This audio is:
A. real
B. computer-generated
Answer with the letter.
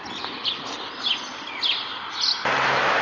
A